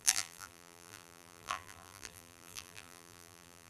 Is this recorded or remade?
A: remade